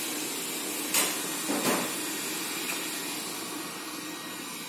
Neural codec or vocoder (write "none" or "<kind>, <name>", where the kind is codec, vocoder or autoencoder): none